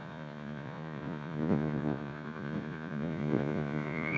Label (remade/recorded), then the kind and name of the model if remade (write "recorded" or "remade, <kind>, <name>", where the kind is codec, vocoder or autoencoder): remade, vocoder, Vocos